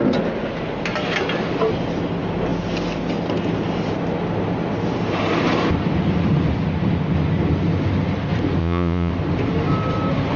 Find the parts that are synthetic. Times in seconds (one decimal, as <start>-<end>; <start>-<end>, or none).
8.6-9.1